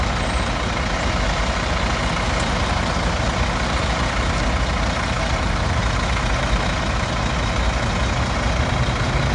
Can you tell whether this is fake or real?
real